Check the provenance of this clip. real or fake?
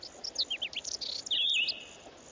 real